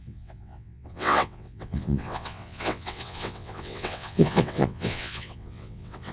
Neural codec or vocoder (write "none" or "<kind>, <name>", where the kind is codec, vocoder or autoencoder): vocoder, WaveNeXt